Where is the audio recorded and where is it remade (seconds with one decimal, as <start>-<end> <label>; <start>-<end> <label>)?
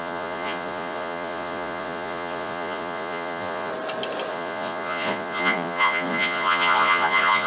0.0-3.7 remade; 3.7-4.3 recorded; 4.3-7.5 remade